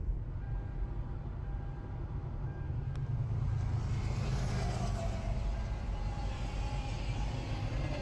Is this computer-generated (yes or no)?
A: no